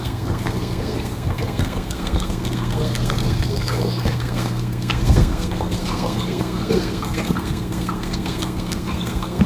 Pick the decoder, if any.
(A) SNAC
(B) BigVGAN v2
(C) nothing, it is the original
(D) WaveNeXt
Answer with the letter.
A